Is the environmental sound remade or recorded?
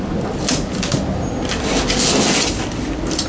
recorded